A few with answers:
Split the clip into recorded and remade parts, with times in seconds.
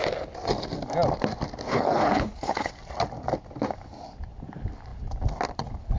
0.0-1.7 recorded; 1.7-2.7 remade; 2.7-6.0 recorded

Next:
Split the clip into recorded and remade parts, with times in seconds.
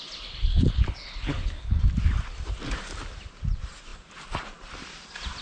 0.0-0.5 recorded; 0.5-1.8 remade; 1.8-5.4 recorded